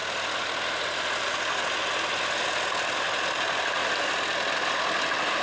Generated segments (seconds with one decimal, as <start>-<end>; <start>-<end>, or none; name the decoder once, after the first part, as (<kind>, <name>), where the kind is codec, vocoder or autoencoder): none